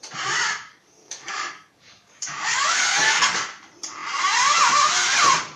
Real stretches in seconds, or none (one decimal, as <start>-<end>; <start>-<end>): 0.0-0.7; 3.4-5.6